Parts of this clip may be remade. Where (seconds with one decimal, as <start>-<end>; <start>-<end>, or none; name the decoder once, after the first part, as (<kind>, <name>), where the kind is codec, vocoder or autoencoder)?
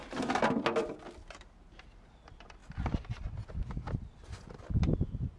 none